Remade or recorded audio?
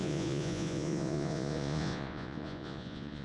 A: remade